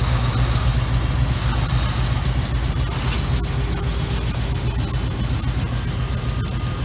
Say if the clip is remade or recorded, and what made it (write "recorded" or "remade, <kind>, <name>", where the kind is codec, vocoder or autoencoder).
recorded